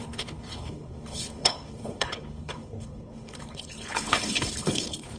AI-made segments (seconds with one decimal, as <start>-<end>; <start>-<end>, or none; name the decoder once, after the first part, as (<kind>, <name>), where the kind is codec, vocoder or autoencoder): 0.0-5.2 (codec, HILCodec)